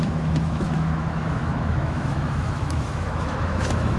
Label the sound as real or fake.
fake